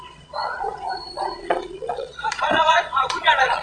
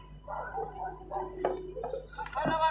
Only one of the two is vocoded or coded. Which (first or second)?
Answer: first